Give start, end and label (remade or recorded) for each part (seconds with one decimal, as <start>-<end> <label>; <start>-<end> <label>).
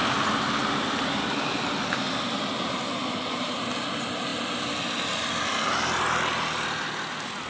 0.0-7.5 recorded